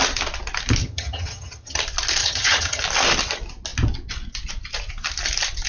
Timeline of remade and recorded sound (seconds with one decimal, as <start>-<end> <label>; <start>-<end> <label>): 0.0-0.8 recorded; 0.8-1.8 remade; 1.8-2.2 recorded; 2.2-2.8 remade; 2.8-5.7 recorded

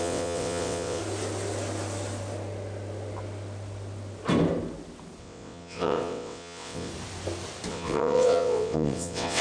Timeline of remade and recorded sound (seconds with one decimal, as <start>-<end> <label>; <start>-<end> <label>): 0.0-1.0 remade; 1.0-5.2 recorded; 5.2-6.9 remade; 6.9-7.7 recorded; 7.7-9.4 remade

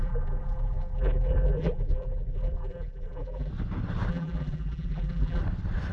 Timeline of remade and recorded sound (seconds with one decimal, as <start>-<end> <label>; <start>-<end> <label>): 0.0-3.5 remade; 3.5-4.1 recorded; 4.1-5.4 remade; 5.4-5.9 recorded